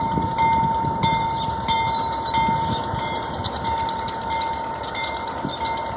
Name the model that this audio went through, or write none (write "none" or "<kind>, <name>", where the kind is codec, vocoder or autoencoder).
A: none